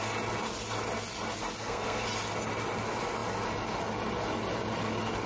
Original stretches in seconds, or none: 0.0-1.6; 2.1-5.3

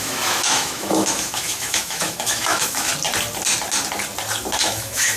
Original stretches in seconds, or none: 2.9-4.6

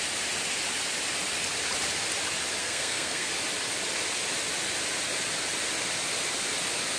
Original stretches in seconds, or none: 0.0-2.6; 3.3-7.0

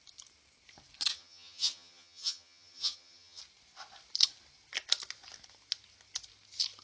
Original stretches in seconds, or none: 0.0-1.1; 3.4-6.8

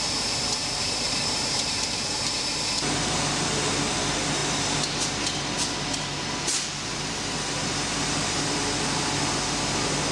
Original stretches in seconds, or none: 0.0-0.6; 2.4-10.1

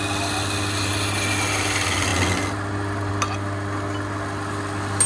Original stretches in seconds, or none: 0.0-5.1

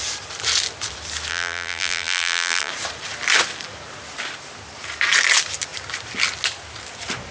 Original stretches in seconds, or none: 0.0-1.3; 2.7-7.3